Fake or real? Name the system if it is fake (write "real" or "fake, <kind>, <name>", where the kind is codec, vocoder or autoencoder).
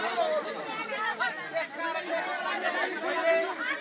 real